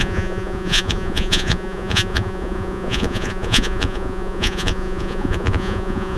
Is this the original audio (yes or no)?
no